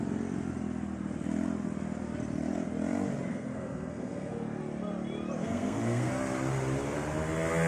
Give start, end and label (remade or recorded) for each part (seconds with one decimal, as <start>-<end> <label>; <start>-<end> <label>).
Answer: 0.0-3.3 recorded; 3.3-4.6 remade; 4.6-5.4 recorded; 5.4-6.1 remade; 6.1-7.7 recorded